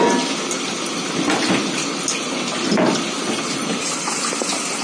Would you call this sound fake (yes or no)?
no